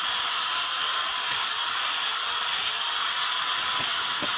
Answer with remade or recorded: recorded